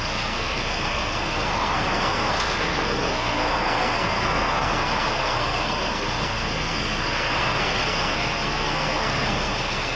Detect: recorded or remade remade